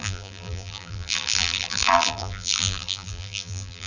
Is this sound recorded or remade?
remade